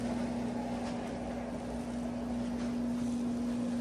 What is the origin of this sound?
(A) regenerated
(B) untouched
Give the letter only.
B